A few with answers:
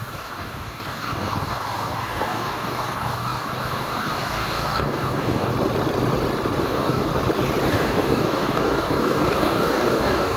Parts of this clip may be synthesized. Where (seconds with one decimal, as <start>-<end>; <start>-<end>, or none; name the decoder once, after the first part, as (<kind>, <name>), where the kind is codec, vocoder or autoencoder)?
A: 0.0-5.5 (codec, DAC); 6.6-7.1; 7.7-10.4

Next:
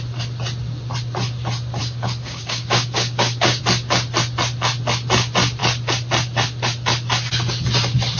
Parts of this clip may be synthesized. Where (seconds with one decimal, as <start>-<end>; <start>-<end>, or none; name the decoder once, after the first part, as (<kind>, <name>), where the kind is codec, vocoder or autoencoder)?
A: 1.8-3.6 (codec, DAC)

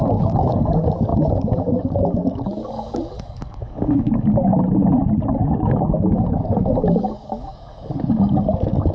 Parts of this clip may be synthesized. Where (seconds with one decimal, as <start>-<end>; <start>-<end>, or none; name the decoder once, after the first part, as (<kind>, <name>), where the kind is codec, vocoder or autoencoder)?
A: 0.0-4.5 (codec, DAC); 5.4-8.9

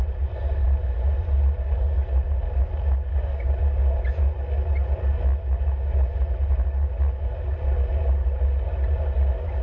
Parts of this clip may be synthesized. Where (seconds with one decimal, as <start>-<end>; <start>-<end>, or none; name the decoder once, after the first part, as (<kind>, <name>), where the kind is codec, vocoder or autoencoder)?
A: 3.1-3.6 (codec, DAC)

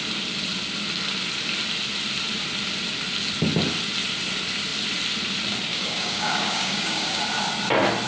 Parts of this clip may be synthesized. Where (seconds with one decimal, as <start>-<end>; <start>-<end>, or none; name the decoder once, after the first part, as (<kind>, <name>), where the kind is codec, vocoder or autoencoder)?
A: 5.7-7.2 (codec, DAC)

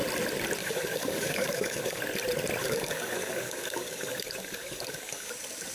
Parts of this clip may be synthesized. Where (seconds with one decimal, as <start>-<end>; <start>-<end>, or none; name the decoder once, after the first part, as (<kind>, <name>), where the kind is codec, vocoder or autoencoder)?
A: 0.6-2.0 (codec, DAC); 2.6-5.3

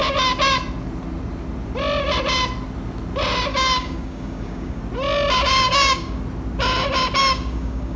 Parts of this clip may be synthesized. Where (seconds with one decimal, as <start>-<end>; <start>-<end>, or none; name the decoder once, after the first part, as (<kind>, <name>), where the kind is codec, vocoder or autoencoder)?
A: 3.5-4.8 (codec, DAC); 5.5-6.2; 7.2-8.0